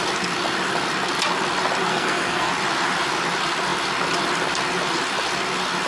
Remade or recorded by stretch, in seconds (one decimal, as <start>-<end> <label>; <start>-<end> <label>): 0.0-1.9 recorded; 1.9-2.5 remade; 2.5-5.9 recorded